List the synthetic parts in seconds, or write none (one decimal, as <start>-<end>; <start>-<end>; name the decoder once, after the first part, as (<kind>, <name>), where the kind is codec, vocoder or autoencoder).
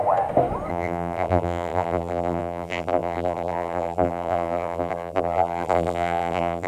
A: 0.7-6.7 (vocoder, BigVGAN v2)